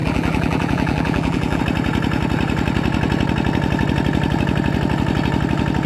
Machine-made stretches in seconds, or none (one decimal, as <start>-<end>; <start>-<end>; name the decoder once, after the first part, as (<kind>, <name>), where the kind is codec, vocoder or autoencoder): 0.0-1.6 (vocoder, BigVGAN v2)